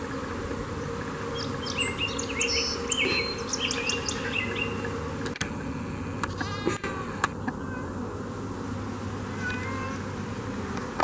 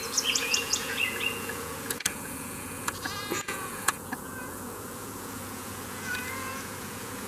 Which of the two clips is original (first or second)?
first